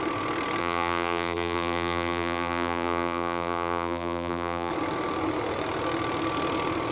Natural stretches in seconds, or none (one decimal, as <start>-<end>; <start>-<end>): 0.0-0.6; 4.7-6.9